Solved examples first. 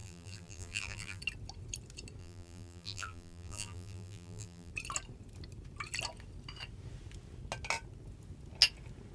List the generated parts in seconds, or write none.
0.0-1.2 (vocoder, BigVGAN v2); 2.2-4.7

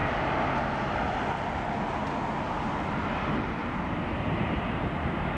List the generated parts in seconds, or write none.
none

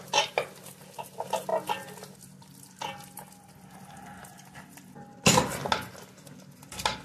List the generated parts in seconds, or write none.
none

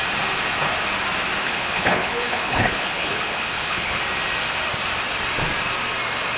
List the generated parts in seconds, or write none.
1.4-4.0 (codec, HILCodec)

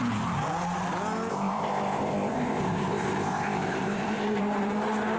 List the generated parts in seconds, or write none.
1.3-4.4 (codec, ZipCodec)

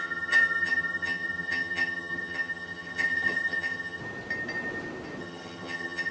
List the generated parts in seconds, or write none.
0.0-4.0 (vocoder, HiFi-GAN); 5.2-6.1

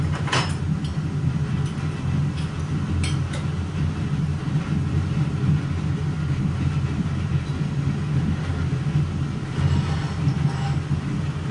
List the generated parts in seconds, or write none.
none